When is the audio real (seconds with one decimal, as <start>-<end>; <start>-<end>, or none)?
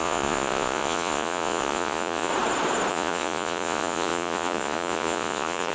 2.3-2.9